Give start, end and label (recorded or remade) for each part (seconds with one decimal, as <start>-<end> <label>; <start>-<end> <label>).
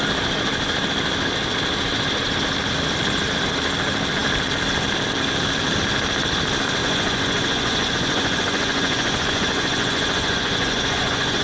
0.0-6.8 recorded; 6.8-11.4 remade